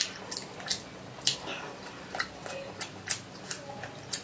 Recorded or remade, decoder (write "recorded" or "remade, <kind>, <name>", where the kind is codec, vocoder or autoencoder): recorded